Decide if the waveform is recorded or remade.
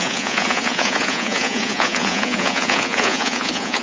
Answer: remade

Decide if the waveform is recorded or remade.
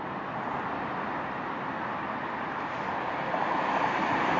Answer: recorded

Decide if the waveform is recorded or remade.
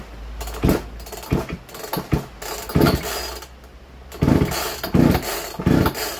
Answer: recorded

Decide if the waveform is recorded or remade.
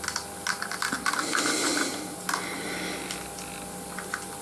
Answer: recorded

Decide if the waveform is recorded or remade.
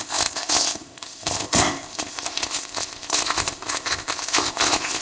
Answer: remade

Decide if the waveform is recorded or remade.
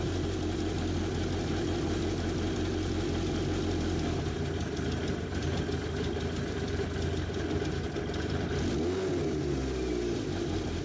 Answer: recorded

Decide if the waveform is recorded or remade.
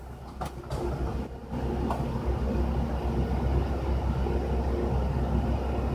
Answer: recorded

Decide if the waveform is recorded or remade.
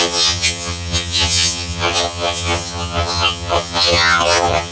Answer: remade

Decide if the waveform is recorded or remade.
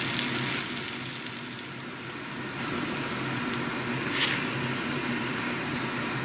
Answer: recorded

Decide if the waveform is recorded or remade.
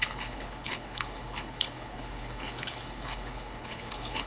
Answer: remade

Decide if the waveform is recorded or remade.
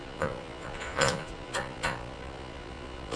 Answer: remade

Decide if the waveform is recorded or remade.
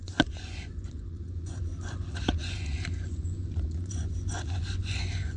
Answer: remade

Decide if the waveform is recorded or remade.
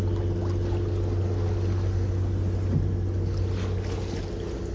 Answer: recorded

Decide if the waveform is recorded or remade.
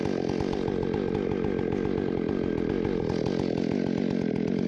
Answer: recorded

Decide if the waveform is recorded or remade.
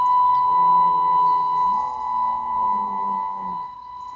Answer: recorded